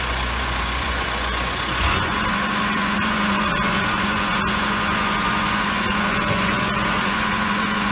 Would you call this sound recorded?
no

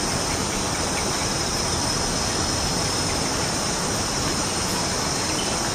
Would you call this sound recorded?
yes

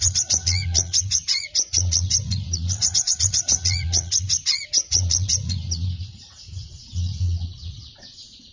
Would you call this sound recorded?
no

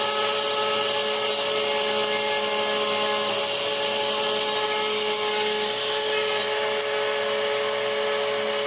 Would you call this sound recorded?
yes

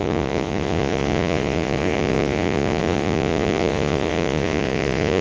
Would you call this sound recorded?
no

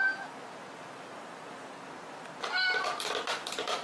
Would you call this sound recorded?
yes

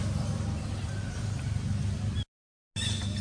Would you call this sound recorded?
yes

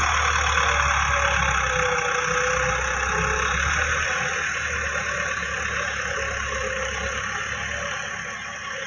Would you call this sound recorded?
yes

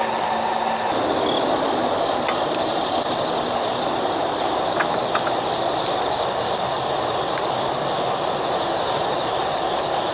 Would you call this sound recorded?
yes